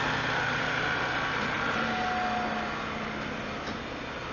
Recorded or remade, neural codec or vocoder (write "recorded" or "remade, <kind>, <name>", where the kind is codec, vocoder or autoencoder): recorded